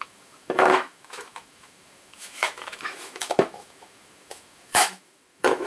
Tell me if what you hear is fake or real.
fake